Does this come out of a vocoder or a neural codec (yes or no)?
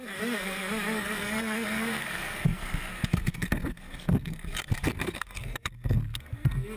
yes